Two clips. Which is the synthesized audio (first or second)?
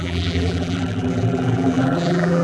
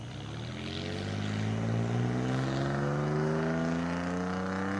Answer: first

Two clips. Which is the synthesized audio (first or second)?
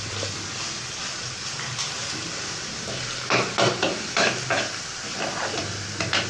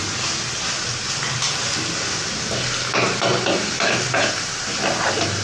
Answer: first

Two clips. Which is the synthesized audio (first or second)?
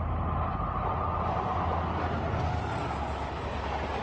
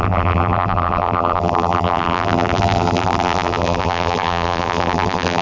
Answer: second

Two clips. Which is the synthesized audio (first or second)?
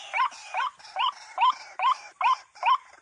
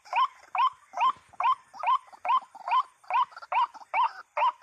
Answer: first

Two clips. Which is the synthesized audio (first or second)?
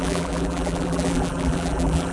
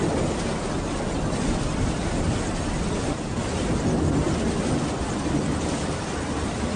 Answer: first